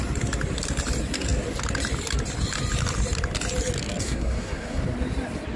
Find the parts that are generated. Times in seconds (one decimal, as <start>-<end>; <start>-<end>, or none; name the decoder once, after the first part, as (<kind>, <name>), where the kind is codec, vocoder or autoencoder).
4.0-4.8 (codec, SNAC)